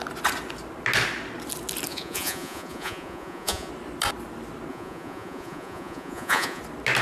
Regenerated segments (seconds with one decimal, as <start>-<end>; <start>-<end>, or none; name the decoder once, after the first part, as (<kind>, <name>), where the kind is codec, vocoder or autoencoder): 1.9-3.7 (vocoder, Vocos); 4.7-6.6